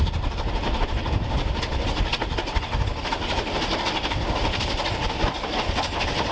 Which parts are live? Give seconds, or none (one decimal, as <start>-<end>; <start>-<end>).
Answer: 0.0-6.3